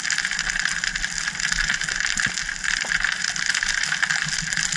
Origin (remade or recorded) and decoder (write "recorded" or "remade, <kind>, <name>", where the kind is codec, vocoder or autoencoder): recorded